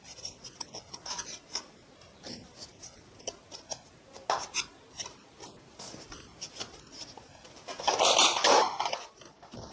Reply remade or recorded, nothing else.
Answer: recorded